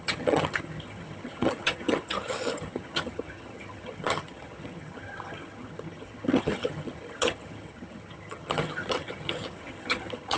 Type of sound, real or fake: fake